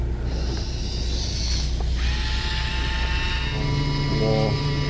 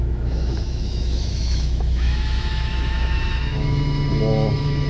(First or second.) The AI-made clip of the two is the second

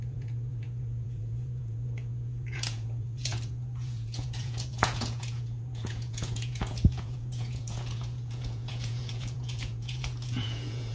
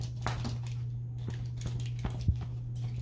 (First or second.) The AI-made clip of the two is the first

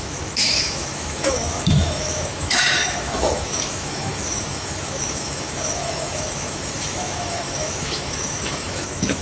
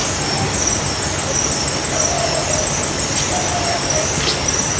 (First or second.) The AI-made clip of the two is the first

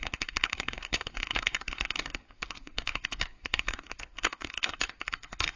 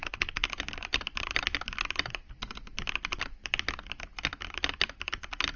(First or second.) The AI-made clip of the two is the first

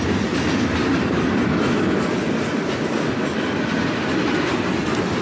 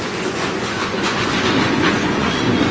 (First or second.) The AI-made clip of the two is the second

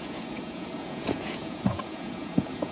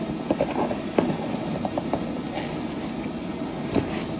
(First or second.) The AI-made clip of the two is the first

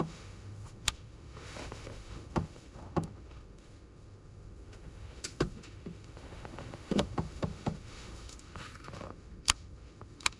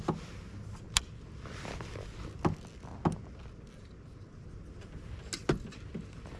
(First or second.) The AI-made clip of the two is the first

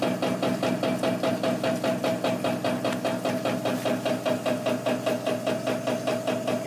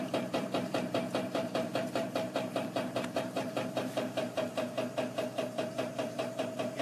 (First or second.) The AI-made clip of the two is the second